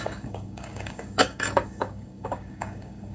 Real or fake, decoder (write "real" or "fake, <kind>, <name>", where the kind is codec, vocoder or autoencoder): fake, codec, DAC